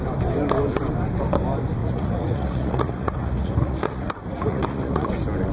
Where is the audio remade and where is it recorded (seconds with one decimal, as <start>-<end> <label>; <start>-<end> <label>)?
0.0-1.8 recorded; 1.8-5.1 remade; 5.1-5.5 recorded